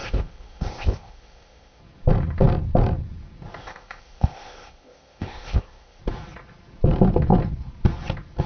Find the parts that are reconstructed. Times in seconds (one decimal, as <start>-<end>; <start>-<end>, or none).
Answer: 0.0-1.8; 3.6-6.0